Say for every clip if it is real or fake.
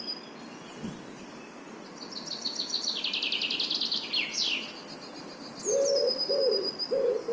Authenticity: real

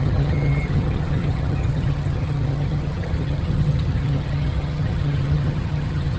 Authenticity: fake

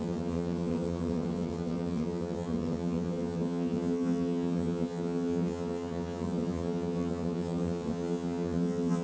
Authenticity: fake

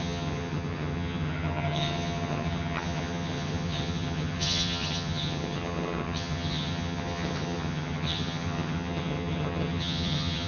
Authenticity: fake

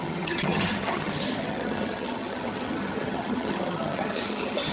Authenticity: fake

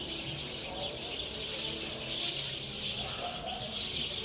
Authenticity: real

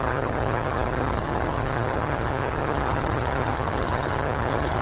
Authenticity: fake